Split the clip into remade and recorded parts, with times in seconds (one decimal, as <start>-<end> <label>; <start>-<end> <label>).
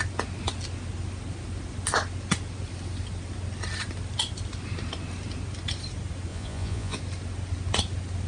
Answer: 0.0-6.3 recorded; 6.3-7.0 remade; 7.0-8.3 recorded